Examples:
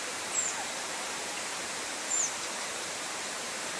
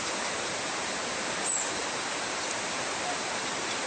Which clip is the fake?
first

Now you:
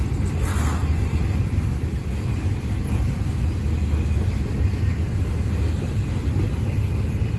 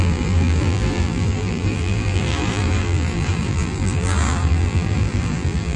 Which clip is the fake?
second